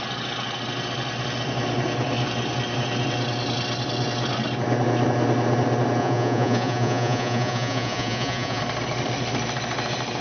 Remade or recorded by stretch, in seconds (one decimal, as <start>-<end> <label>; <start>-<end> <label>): 0.0-6.0 recorded; 6.0-8.6 remade; 8.6-10.2 recorded